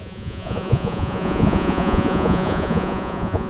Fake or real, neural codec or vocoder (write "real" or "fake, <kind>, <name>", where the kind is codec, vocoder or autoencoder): fake, vocoder, Vocos